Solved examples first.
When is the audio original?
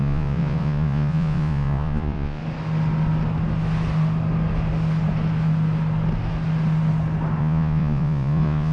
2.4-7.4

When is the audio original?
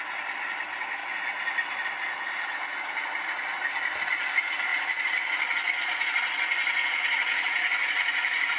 0.0-8.6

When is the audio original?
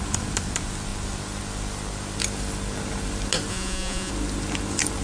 0.0-3.5; 4.1-5.0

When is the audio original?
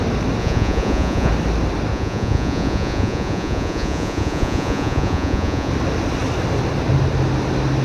0.0-0.4; 1.3-1.9; 5.7-7.8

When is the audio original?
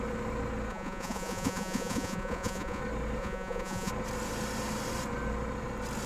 0.0-0.7; 2.8-3.2; 3.9-6.1